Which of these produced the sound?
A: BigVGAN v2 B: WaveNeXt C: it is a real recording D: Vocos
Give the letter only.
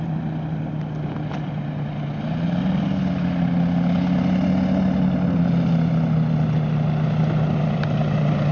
C